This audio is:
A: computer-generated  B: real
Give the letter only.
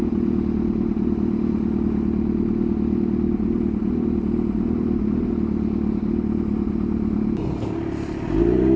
B